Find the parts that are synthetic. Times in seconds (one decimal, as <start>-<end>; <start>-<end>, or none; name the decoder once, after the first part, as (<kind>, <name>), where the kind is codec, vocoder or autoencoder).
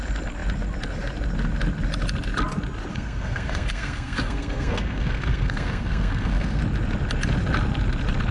2.9-6.6 (codec, SNAC)